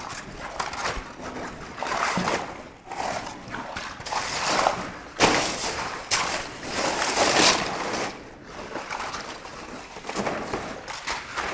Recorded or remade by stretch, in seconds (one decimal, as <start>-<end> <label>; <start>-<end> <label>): 0.0-11.5 recorded